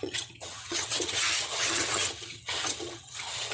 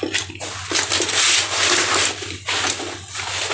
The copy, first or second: first